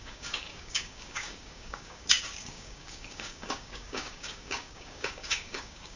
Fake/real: fake